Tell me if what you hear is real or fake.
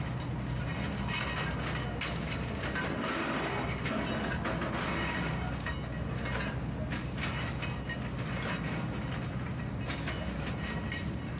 real